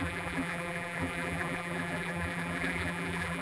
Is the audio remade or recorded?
remade